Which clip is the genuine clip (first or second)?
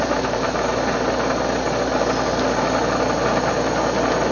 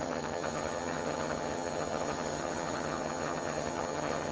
first